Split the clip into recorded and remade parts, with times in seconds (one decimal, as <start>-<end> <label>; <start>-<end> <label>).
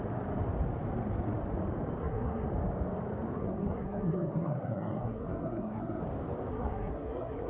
0.0-2.0 recorded; 2.0-2.5 remade; 2.5-3.4 recorded; 3.4-6.0 remade; 6.0-6.5 recorded; 6.5-7.5 remade